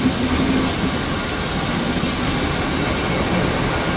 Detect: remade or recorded recorded